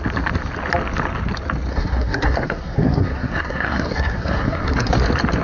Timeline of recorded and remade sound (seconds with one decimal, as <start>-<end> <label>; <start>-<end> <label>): 0.0-1.7 recorded; 1.7-4.9 remade; 4.9-5.4 recorded